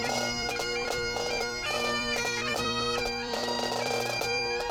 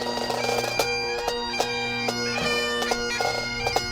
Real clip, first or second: second